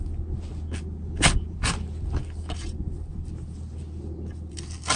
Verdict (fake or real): real